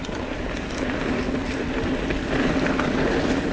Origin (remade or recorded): recorded